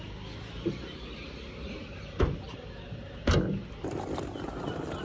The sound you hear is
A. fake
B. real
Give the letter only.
B